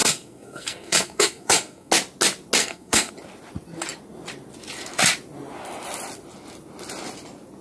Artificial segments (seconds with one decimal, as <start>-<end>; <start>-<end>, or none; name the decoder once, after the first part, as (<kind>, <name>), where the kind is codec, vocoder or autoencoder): 0.0-1.9 (codec, SNAC); 2.6-3.1